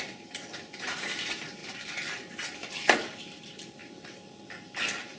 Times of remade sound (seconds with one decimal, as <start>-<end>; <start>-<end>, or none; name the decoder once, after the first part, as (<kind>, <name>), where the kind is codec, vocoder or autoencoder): 0.0-5.2 (vocoder, BigVGAN v2)